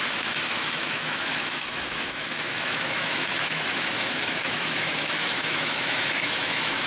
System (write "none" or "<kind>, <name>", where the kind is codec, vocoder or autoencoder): autoencoder, DAC-VAE